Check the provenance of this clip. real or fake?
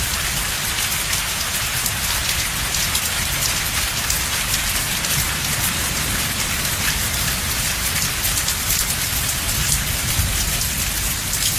real